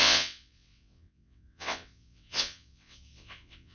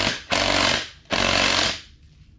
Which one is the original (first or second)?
second